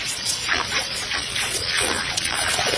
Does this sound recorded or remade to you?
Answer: remade